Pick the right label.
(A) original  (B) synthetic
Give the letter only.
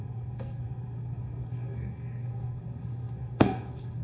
B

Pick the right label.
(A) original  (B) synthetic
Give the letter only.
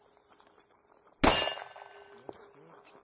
A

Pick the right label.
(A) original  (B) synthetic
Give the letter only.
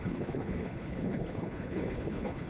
B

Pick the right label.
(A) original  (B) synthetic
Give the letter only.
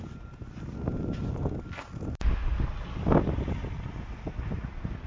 A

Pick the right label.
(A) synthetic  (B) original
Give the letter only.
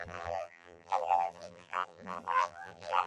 A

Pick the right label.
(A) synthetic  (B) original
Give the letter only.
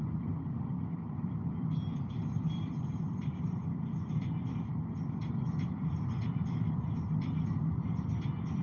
B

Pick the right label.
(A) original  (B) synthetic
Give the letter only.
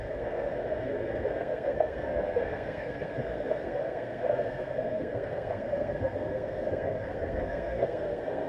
B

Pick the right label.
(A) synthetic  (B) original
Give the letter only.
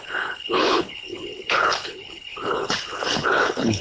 A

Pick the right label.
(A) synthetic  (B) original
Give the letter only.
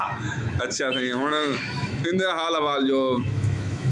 A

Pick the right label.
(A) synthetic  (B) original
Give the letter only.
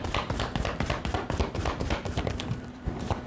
A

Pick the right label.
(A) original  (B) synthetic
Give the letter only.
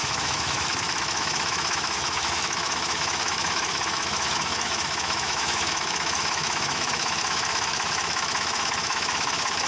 B